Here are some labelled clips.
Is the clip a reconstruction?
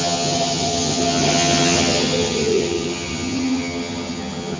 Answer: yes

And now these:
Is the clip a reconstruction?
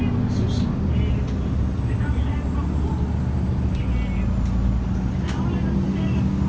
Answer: no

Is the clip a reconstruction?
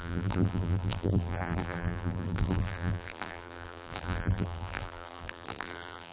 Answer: yes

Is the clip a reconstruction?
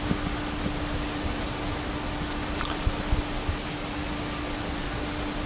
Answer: no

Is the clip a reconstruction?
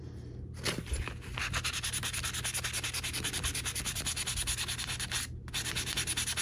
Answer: no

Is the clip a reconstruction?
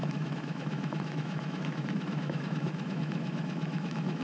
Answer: yes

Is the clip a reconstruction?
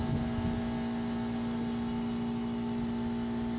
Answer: no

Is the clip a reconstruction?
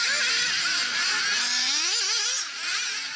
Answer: no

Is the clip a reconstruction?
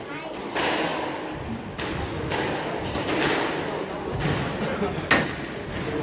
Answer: no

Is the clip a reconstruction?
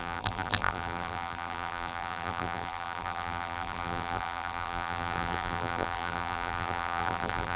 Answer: yes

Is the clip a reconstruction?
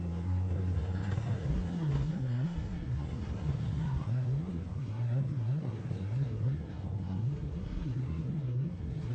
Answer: yes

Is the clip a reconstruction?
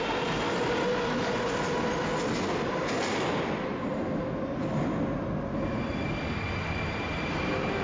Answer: no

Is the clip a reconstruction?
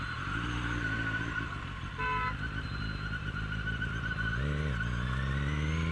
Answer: no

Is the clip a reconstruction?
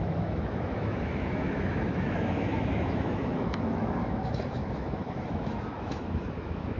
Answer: yes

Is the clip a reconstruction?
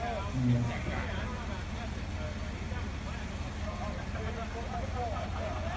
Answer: no